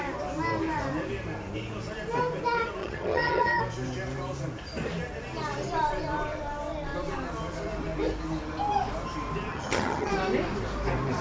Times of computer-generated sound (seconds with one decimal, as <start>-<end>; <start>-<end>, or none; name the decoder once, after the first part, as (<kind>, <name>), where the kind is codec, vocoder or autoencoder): 2.8-3.6 (vocoder, HiFi-GAN); 9.5-10.1